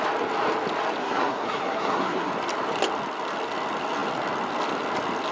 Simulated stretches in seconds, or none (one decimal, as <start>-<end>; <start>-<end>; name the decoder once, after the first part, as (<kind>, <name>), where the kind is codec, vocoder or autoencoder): 1.0-2.3 (codec, SNAC)